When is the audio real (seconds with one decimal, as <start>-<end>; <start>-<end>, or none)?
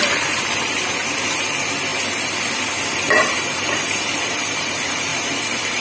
none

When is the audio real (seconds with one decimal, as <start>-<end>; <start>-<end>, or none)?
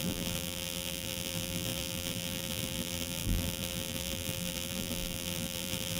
none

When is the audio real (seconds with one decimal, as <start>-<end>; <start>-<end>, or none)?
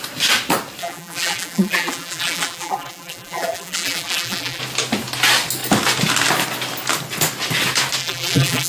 0.0-0.8; 4.6-8.0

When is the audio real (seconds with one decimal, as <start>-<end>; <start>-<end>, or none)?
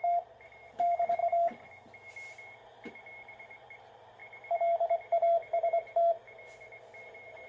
1.2-2.8; 4.2-7.0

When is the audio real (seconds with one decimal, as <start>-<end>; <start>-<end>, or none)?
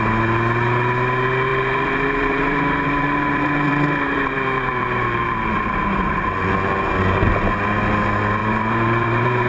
0.0-1.5; 6.1-8.4